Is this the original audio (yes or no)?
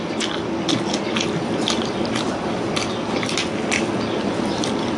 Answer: yes